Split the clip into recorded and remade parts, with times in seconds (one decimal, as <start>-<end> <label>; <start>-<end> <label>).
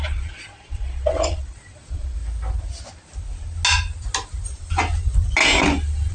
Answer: 0.0-2.2 remade; 2.2-6.1 recorded